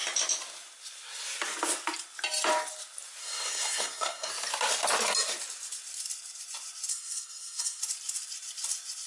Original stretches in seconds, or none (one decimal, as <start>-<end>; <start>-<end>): 0.0-3.2; 4.3-6.9; 7.8-9.1